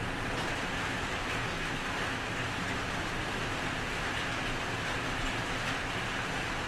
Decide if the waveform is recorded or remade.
recorded